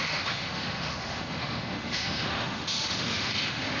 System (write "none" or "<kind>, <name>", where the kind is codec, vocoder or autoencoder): autoencoder, DAC-VAE